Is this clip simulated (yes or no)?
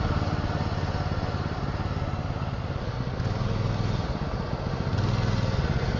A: no